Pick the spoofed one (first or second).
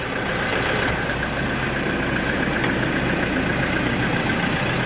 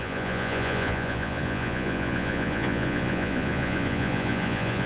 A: second